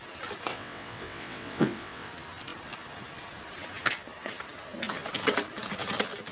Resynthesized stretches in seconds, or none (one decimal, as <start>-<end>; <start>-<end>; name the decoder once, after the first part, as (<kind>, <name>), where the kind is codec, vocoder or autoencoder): 0.5-2.1 (vocoder, WaveNeXt)

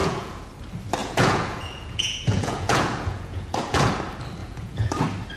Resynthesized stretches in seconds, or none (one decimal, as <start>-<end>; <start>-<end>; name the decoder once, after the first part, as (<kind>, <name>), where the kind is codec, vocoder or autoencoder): 0.0-0.5 (vocoder, Vocos); 1.0-3.9; 4.4-4.9

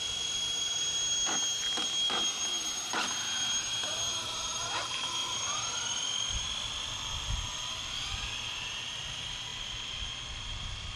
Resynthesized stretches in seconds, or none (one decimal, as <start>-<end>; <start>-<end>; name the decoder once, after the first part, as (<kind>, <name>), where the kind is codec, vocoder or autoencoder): none

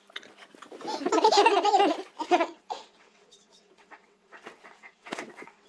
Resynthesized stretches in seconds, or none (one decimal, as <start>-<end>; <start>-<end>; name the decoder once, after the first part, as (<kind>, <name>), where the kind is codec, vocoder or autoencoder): 2.2-5.7 (vocoder, WaveNeXt)

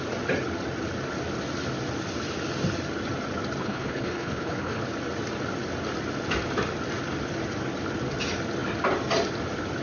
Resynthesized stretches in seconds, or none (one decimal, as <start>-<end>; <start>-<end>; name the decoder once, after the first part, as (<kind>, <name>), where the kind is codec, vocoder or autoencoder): 3.6-4.8 (codec, HILCodec)

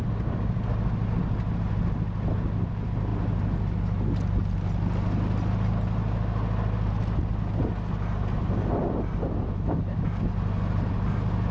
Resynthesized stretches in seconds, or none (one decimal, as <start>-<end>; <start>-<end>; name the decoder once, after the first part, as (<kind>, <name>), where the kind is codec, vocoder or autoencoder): none

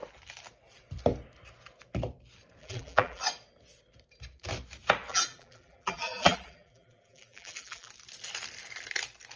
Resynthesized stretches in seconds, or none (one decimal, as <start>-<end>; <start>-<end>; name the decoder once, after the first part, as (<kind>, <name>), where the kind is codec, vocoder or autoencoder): 2.6-3.2 (vocoder, BigVGAN v2); 5.1-7.9

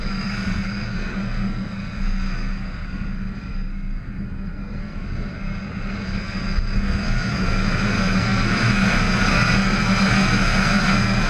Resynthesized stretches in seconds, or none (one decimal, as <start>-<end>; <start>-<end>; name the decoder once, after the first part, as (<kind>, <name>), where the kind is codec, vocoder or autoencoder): 0.0-11.3 (codec, SNAC)